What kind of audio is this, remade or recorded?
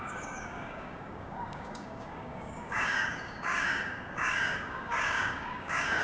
remade